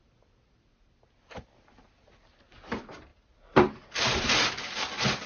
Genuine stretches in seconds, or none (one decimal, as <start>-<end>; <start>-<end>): 0.0-5.3